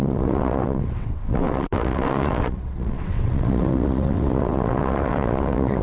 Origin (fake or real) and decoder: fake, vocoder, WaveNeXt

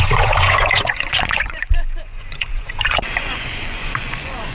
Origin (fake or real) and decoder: fake, vocoder, Vocos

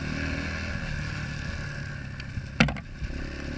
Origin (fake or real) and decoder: real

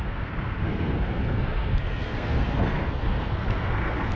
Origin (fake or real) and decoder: fake, codec, SNAC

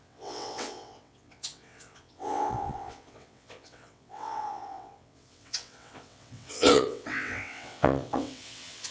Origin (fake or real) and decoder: fake, vocoder, WaveNeXt